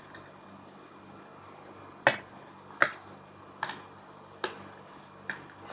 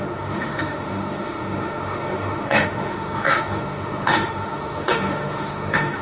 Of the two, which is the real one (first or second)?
first